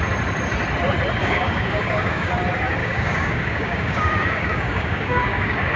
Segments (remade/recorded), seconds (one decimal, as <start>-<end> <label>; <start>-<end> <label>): 0.0-1.2 recorded; 1.2-2.3 remade; 2.3-2.8 recorded; 2.8-5.8 remade

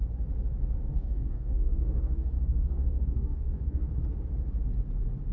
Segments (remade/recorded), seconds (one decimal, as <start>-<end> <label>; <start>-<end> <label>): 0.0-0.9 recorded; 0.9-3.9 remade; 3.9-5.3 recorded

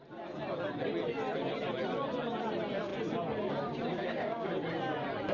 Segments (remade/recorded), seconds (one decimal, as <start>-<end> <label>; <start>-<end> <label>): 0.0-3.9 recorded; 3.9-4.5 remade; 4.5-5.3 recorded

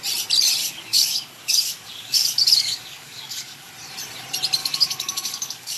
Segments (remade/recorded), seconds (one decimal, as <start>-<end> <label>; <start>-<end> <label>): 0.0-0.6 recorded; 0.6-3.7 remade; 3.7-4.6 recorded; 4.6-5.8 remade

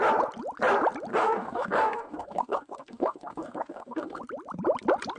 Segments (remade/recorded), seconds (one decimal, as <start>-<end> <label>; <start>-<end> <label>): 0.0-1.1 recorded; 1.1-4.2 remade; 4.2-5.2 recorded